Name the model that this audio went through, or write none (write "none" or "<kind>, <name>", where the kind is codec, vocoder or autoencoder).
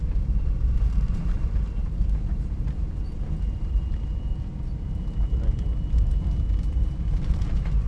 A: vocoder, BigVGAN v2